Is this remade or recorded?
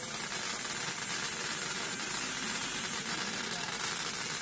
recorded